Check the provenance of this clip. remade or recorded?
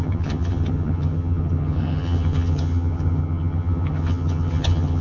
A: remade